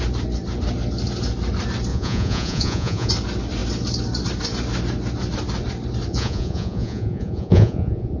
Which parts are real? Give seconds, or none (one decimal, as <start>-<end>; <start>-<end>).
0.0-1.9; 3.1-6.1